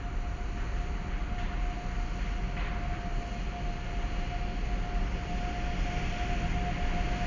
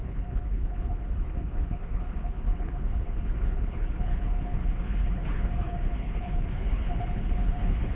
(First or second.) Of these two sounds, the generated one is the second